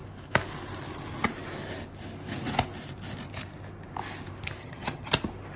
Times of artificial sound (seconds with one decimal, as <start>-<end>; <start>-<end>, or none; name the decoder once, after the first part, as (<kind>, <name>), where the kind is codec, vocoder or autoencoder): 4.6-5.1 (vocoder, HiFi-GAN)